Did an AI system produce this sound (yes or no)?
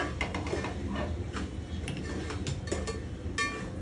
no